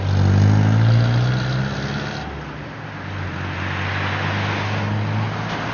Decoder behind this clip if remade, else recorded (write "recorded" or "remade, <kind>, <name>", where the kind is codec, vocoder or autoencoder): recorded